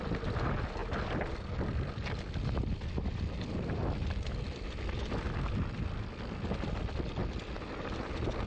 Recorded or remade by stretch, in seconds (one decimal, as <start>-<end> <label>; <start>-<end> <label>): 0.0-0.8 recorded; 0.8-5.9 remade; 5.9-7.2 recorded; 7.2-8.5 remade